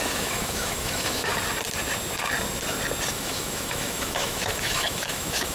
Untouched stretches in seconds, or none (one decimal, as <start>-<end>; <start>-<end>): 1.3-3.1